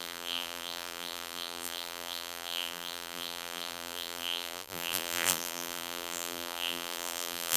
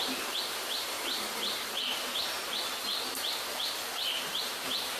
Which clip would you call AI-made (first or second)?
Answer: first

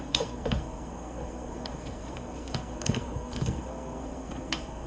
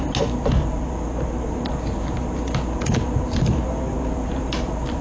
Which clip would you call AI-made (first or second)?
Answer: first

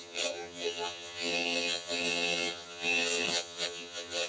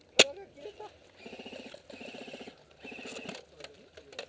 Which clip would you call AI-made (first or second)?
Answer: first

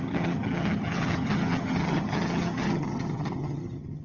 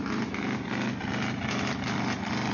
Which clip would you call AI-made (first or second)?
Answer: first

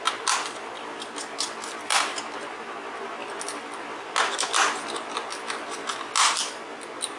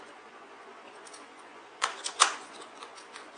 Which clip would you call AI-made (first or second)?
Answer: second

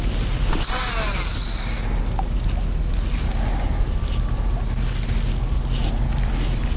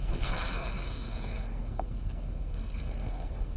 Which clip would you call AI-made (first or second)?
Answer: second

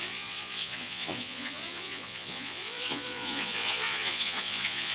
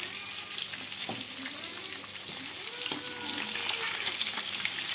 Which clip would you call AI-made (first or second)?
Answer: first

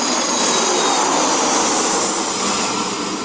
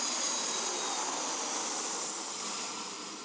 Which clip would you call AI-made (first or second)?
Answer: second